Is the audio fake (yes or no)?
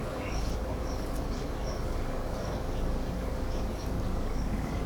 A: yes